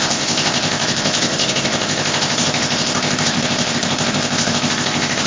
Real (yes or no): no